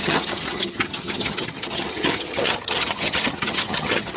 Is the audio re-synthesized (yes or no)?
yes